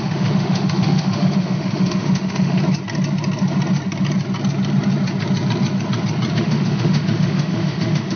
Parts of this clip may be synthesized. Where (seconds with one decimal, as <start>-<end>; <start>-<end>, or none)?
0.0-2.6; 6.3-8.2